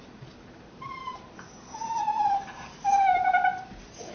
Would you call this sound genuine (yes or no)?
no